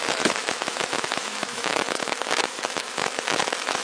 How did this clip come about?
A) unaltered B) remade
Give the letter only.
B